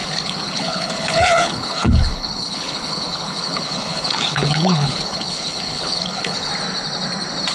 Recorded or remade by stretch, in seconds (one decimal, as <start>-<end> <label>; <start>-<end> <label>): 0.0-6.5 remade; 6.5-7.5 recorded